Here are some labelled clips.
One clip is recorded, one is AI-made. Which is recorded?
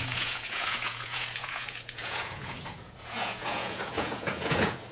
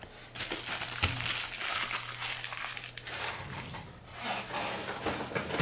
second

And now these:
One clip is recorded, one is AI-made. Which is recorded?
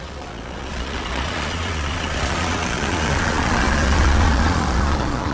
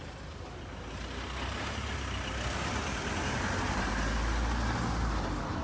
second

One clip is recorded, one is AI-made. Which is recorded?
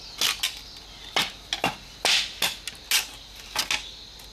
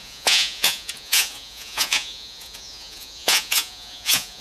first